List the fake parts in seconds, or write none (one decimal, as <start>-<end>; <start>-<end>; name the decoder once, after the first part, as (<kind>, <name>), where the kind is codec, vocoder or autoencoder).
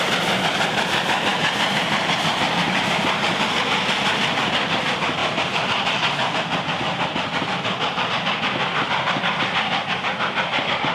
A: none